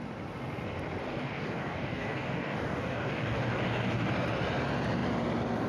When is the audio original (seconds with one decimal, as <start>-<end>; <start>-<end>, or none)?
0.0-1.0; 4.1-5.7